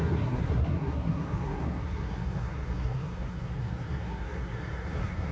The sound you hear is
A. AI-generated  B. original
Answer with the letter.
A